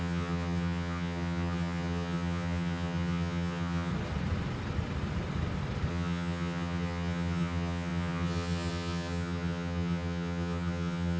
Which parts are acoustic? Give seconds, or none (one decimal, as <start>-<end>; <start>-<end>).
3.9-5.9